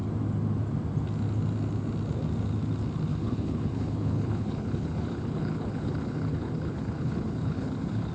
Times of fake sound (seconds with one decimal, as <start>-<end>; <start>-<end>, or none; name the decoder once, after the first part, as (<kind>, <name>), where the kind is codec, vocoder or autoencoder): 3.1-8.1 (codec, HILCodec)